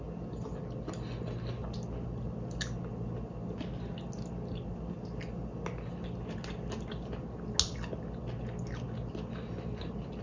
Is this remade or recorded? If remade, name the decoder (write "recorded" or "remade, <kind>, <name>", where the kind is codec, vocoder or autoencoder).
recorded